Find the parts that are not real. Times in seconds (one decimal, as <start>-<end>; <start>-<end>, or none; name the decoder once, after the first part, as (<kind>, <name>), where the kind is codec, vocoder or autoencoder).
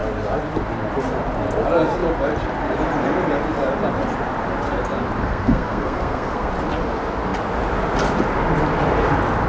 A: 5.2-6.5 (codec, SNAC)